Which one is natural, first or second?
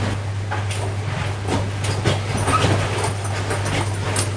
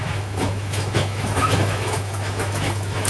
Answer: first